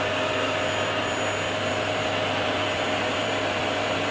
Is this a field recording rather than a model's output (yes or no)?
yes